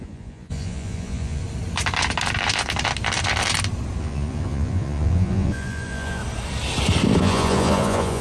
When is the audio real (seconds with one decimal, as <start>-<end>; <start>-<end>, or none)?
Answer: 1.4-4.0; 6.2-7.2